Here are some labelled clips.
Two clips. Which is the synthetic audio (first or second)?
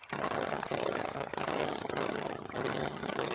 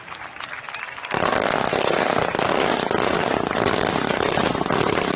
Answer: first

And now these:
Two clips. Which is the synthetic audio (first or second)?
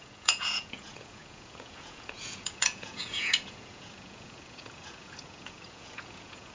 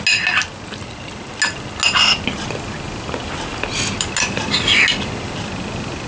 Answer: first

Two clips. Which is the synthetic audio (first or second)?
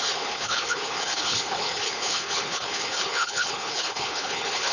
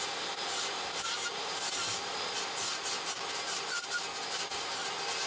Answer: first